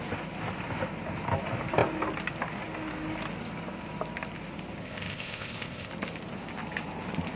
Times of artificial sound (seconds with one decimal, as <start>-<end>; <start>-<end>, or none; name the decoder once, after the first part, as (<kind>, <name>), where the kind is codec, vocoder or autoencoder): 4.8-5.9 (codec, ZipCodec)